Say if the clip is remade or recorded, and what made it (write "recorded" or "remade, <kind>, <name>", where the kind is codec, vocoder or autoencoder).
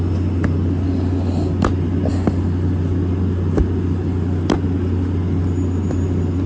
recorded